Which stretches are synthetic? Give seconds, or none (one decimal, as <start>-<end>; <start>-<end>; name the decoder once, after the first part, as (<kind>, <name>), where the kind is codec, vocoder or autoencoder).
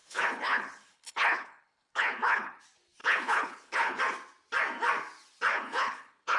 0.0-2.6 (codec, HILCodec); 3.0-4.0; 5.5-6.4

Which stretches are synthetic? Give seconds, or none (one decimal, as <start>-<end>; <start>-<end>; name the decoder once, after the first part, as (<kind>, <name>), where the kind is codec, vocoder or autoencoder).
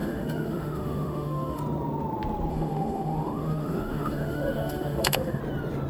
0.0-1.6 (autoencoder, DAC-VAE); 2.5-5.4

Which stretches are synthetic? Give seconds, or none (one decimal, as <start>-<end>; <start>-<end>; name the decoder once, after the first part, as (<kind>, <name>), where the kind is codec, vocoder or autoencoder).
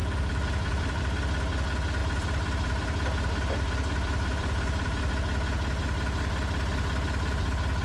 0.0-1.0 (vocoder, BigVGAN v2); 2.0-5.1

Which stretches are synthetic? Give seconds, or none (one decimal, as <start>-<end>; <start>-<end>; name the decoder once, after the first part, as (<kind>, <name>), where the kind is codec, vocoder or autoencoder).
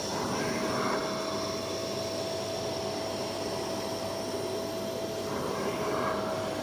none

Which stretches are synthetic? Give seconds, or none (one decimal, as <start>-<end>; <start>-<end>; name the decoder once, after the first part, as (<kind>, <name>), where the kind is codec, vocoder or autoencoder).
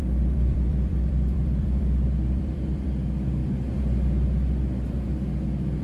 0.0-3.4 (vocoder, BigVGAN v2)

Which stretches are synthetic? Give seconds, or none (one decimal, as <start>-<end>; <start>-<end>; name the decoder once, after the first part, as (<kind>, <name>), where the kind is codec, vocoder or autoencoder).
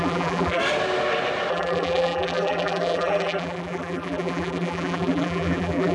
0.0-0.6 (vocoder, BigVGAN v2); 1.5-5.9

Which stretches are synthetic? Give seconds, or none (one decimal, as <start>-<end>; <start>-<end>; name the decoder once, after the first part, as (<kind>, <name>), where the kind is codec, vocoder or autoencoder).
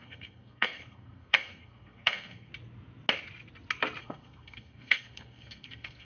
0.0-2.5 (codec, SNAC); 4.0-6.0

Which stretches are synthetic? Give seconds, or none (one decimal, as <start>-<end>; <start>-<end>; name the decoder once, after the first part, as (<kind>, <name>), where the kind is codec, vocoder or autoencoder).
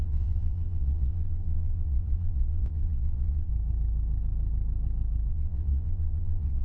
0.0-3.5 (vocoder, Vocos); 5.3-6.6